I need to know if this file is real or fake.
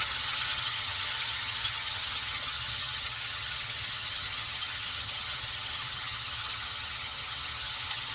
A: fake